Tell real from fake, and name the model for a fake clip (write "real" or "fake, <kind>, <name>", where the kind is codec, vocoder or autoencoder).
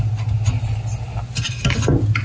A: real